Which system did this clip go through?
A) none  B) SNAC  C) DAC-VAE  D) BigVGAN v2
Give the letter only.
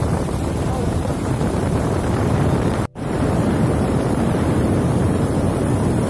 D